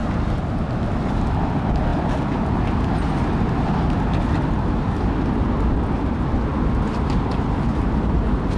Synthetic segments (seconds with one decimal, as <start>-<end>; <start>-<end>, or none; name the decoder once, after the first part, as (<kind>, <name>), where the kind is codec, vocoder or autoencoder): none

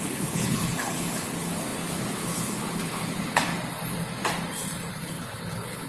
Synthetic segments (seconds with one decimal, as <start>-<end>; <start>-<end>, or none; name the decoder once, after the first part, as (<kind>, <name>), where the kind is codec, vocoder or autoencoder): 0.0-3.5 (codec, HILCodec); 4.9-5.9

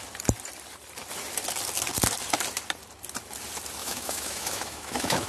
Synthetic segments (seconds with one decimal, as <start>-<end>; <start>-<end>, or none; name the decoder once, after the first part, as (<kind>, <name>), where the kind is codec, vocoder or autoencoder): 3.8-5.3 (autoencoder, DAC-VAE)